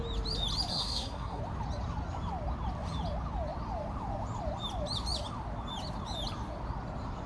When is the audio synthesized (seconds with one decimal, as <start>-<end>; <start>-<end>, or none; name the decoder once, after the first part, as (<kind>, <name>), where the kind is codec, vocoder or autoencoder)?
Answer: 0.7-1.4 (codec, SNAC)